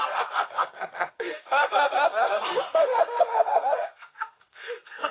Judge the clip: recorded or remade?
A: remade